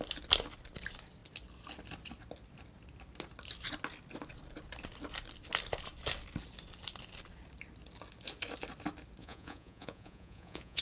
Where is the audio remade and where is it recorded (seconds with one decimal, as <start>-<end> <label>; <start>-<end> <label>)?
0.0-9.2 recorded; 9.2-10.8 remade